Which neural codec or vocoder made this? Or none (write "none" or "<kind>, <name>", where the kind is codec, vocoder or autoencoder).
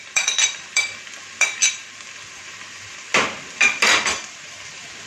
vocoder, BigVGAN v2